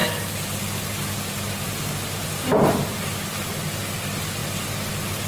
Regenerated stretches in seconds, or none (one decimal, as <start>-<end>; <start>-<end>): none